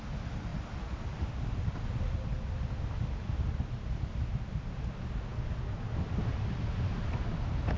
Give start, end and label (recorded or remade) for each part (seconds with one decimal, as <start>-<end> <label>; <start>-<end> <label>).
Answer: 0.0-7.8 recorded